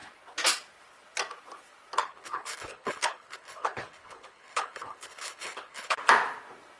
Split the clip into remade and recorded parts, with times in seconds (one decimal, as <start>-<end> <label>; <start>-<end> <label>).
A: 0.0-2.0 recorded; 2.0-6.0 remade; 6.0-6.8 recorded

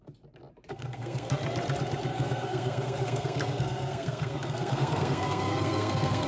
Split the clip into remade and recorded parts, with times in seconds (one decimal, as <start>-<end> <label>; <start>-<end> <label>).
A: 0.0-0.7 recorded; 0.7-1.4 remade; 1.4-2.1 recorded; 2.1-6.3 remade